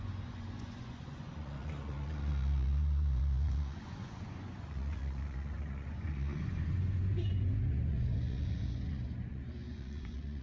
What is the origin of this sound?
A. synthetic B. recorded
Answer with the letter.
A